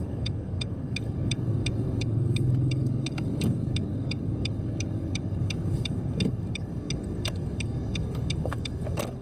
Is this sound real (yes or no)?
no